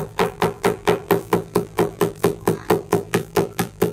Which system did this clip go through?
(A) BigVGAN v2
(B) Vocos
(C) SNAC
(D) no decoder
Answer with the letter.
A